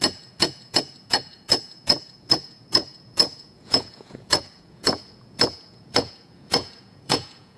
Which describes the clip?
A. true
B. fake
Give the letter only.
B